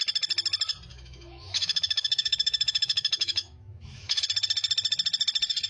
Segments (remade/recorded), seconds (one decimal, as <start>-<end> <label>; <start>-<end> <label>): 0.0-0.9 recorded; 0.9-4.2 remade; 4.2-5.7 recorded